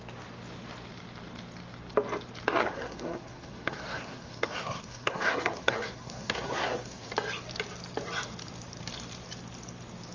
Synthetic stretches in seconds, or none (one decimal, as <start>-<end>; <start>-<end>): 2.6-7.1